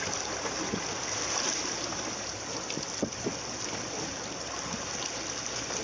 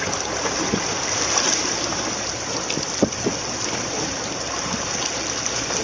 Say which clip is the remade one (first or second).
second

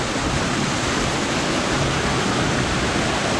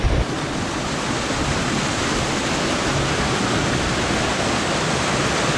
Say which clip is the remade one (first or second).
second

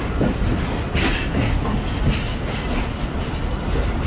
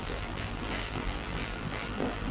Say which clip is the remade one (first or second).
second